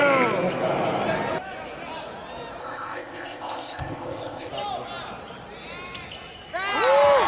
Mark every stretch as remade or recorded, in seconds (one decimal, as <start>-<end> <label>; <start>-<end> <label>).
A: 0.0-2.6 recorded; 2.6-4.5 remade; 4.5-7.3 recorded